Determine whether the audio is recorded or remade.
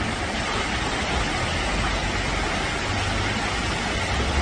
recorded